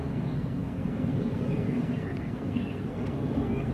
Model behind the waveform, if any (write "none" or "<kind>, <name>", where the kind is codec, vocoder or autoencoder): codec, SNAC